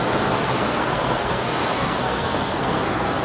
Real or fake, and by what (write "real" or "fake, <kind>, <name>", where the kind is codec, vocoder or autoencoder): fake, codec, SNAC